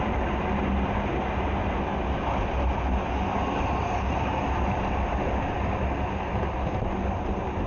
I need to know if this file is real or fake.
real